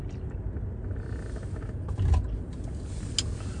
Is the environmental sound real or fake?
real